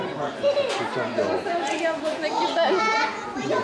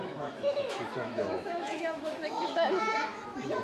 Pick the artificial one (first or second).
second